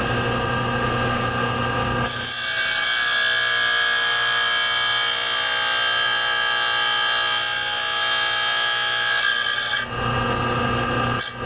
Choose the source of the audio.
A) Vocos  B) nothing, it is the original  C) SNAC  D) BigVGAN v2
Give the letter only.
B